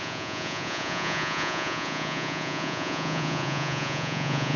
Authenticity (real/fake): fake